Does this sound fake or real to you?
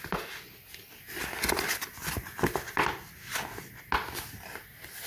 real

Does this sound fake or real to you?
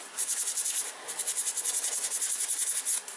real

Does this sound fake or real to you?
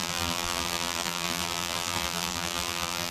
fake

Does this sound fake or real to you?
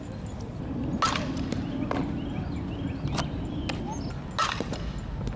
real